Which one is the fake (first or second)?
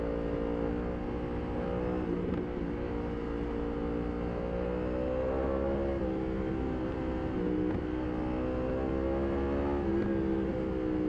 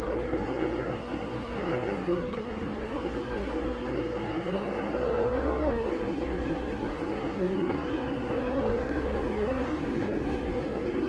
second